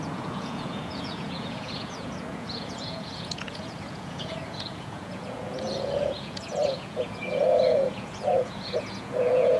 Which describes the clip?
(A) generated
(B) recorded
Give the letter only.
A